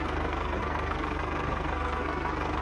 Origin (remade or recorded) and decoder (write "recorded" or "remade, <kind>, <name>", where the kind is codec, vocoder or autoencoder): remade, codec, SNAC